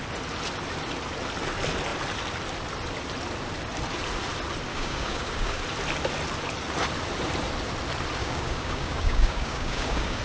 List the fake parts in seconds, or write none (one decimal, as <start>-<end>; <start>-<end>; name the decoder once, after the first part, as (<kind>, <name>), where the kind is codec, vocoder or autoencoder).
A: 4.7-5.6 (codec, DAC); 8.2-10.2